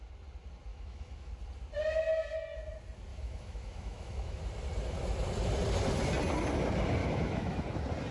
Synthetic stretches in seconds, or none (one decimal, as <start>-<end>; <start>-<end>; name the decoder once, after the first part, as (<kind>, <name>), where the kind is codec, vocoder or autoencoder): 0.7-1.3 (autoencoder, DAC-VAE); 3.1-4.4; 7.0-7.6

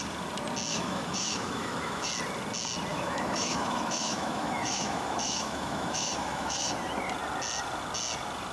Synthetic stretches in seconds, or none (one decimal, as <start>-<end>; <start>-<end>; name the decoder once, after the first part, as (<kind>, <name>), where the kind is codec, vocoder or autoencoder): 0.7-2.1 (autoencoder, DAC-VAE); 2.9-6.7

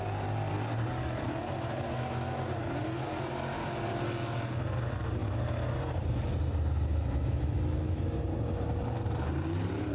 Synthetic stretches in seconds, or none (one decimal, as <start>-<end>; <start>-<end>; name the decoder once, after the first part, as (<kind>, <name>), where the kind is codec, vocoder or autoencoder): 6.9-8.0 (autoencoder, DAC-VAE)

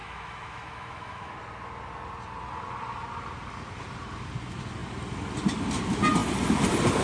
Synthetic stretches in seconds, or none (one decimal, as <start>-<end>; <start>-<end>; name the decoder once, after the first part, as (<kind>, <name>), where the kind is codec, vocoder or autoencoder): 0.0-1.3 (autoencoder, DAC-VAE)

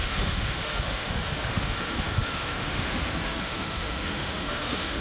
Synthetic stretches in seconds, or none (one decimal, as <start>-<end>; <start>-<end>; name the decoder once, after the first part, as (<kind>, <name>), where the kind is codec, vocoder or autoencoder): 0.0-5.0 (autoencoder, DAC-VAE)

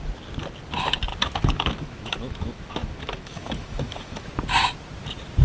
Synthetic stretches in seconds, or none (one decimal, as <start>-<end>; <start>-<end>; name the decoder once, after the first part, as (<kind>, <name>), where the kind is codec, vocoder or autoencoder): 1.1-4.3 (autoencoder, DAC-VAE)

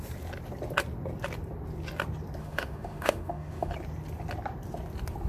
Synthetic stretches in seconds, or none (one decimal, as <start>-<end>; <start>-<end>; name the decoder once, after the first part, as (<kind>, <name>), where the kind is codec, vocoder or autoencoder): 2.4-3.7 (autoencoder, DAC-VAE)